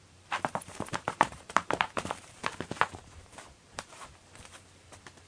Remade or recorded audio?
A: remade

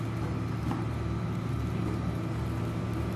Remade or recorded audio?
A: recorded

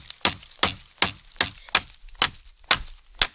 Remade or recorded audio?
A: recorded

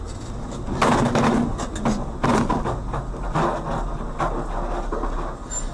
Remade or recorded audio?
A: recorded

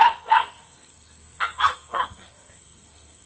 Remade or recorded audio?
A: remade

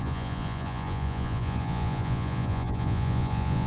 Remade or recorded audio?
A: remade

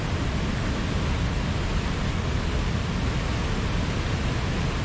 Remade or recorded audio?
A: recorded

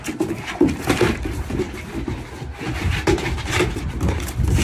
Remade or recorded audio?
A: recorded